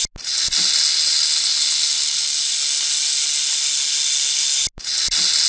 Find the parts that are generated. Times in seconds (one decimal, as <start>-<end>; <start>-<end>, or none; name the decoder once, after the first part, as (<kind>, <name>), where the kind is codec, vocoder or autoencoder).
none